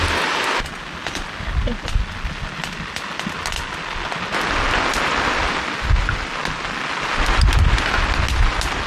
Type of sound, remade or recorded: recorded